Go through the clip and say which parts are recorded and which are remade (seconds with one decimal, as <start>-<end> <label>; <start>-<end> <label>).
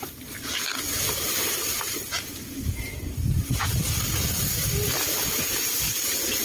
0.0-0.7 recorded; 0.7-4.5 remade; 4.5-6.4 recorded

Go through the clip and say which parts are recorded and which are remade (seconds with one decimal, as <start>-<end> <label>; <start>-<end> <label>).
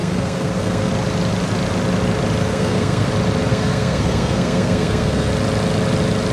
0.0-0.9 remade; 0.9-2.5 recorded; 2.5-3.1 remade; 3.1-3.5 recorded; 3.5-5.3 remade; 5.3-6.3 recorded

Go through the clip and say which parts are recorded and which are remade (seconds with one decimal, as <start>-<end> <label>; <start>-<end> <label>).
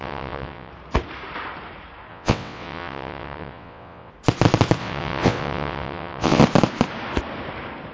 0.0-0.7 remade; 0.7-2.1 recorded; 2.1-4.1 remade; 4.1-4.8 recorded; 4.8-6.4 remade; 6.4-7.9 recorded